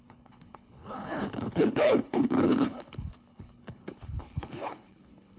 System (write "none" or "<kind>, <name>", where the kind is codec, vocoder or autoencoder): codec, HILCodec